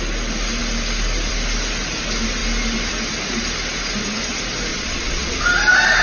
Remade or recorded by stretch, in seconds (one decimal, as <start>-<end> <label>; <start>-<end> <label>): 0.0-4.7 recorded; 4.7-5.4 remade; 5.4-6.0 recorded